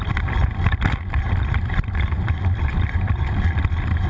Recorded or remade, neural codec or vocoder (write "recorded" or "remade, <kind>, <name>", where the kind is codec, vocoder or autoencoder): remade, vocoder, BigVGAN v2